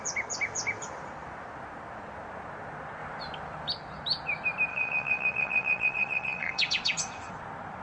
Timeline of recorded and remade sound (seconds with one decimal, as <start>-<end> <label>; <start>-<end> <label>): 0.0-4.7 recorded; 4.7-7.3 remade; 7.3-7.8 recorded